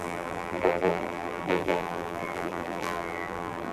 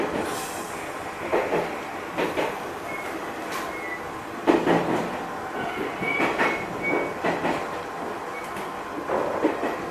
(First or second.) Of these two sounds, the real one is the second